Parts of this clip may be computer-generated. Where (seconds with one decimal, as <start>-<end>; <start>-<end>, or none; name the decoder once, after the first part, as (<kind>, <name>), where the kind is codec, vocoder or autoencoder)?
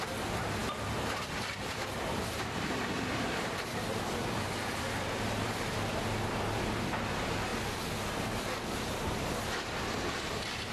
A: 0.0-10.7 (vocoder, BigVGAN v2)